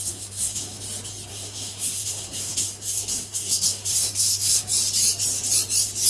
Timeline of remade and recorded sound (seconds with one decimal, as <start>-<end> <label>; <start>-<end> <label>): 0.0-0.8 remade; 0.8-1.3 recorded; 1.3-4.6 remade; 4.6-6.1 recorded